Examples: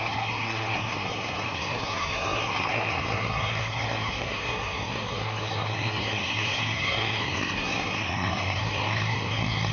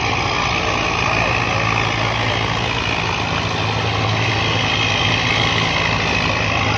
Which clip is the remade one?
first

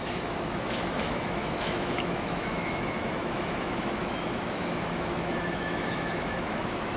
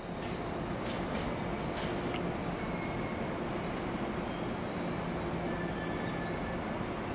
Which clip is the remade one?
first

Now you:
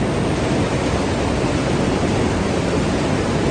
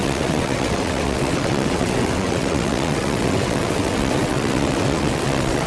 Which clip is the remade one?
second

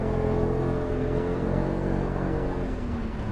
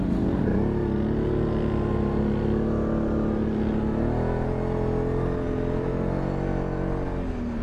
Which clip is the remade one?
first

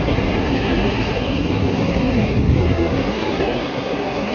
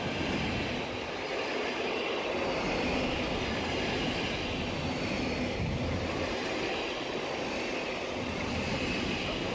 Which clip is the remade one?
first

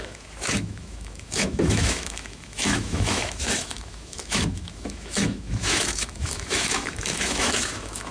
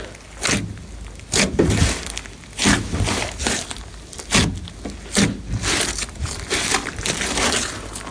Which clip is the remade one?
first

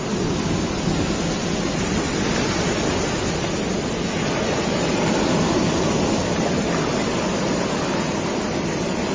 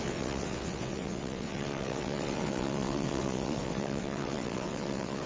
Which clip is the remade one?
second